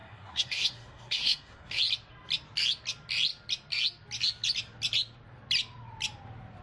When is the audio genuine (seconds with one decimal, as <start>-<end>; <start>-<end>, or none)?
1.8-6.6